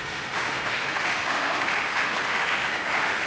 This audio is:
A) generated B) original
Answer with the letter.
A